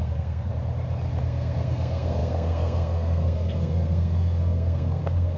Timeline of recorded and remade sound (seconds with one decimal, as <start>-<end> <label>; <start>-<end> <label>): 0.0-0.5 remade; 0.5-1.2 recorded; 1.2-5.4 remade